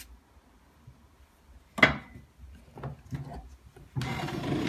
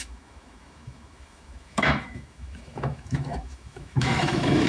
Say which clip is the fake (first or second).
second